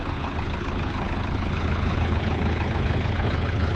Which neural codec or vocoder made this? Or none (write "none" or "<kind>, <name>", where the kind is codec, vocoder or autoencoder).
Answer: codec, HILCodec